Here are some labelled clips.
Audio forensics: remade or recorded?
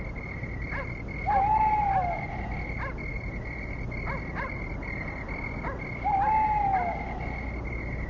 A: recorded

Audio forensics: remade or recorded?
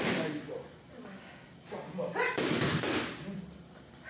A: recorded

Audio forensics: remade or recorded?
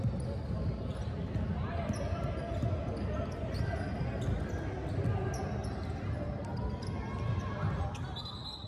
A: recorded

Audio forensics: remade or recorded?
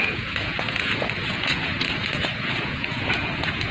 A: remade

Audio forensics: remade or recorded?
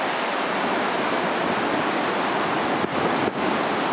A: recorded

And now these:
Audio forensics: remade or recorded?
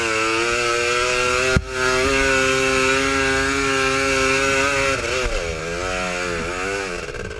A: recorded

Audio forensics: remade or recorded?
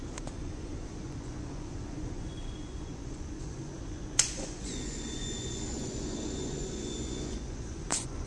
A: remade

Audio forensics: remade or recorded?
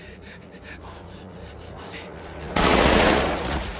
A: remade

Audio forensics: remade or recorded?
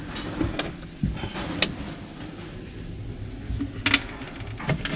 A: recorded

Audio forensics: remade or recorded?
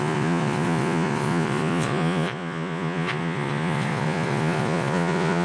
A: remade